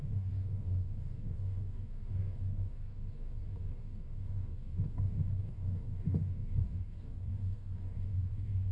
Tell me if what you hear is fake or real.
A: fake